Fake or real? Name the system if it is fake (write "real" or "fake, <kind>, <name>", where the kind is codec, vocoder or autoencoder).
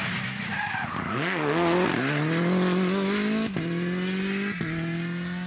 real